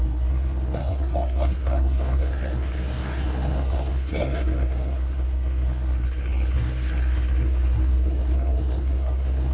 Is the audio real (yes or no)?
no